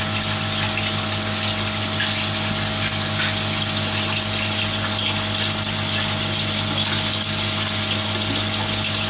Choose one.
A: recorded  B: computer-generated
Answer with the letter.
A